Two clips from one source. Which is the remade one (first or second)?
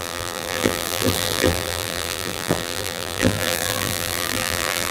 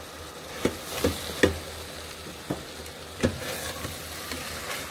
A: first